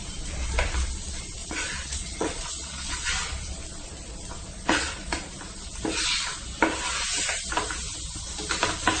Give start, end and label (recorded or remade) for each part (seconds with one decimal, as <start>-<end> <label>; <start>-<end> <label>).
0.0-1.4 recorded; 1.4-2.9 remade; 2.9-4.5 recorded; 4.5-5.2 remade; 5.2-9.0 recorded